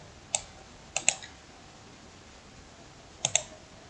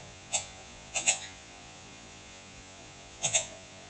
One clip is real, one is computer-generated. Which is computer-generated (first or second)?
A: second